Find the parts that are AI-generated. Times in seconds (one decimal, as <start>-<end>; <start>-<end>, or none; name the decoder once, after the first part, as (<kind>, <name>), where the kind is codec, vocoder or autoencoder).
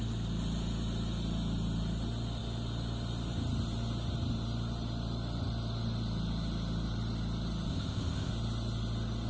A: 7.7-8.3 (codec, ZipCodec)